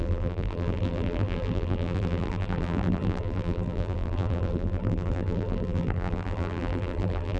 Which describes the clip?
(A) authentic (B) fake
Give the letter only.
B